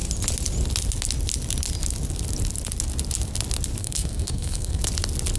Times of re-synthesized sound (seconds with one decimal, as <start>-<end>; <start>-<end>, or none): 3.8-4.8